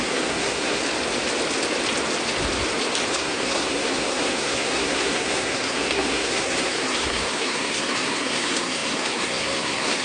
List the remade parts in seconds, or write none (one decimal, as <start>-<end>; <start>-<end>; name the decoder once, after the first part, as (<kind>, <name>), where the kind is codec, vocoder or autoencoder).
0.0-0.8 (codec, SNAC); 3.1-10.0